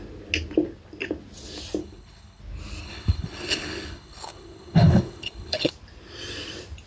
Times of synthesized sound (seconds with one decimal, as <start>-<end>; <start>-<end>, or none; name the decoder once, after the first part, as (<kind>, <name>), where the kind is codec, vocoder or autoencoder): 1.8-2.4 (codec, HILCodec); 2.8-5.7